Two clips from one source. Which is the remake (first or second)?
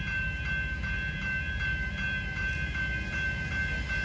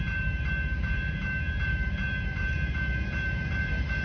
second